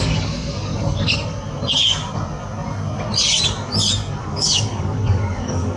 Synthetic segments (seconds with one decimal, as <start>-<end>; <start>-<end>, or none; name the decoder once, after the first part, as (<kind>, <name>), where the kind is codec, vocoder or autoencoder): 0.0-0.7 (codec, DAC); 4.2-5.8